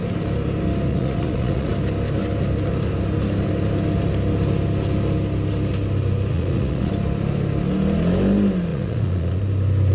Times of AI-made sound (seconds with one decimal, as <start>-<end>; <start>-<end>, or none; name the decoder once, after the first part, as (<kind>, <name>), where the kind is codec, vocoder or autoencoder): 0.9-1.7 (vocoder, Vocos); 6.3-6.9; 8.7-9.4